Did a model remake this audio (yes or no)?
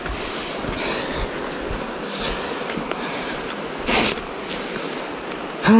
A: no